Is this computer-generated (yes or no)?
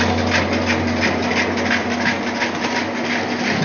no